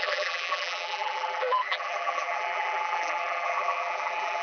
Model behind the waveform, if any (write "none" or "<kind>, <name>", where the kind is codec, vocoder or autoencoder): vocoder, BigVGAN v2